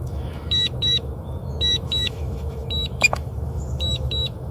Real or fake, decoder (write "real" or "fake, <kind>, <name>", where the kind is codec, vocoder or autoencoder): fake, autoencoder, DAC-VAE